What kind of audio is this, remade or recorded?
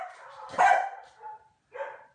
remade